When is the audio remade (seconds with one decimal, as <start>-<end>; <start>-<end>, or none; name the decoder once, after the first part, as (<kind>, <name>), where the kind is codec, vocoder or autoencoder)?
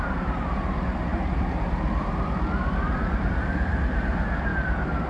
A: 0.0-4.5 (vocoder, BigVGAN v2)